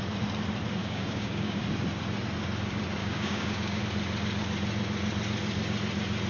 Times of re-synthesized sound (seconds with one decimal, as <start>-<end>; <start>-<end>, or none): 0.8-1.6; 3.0-3.8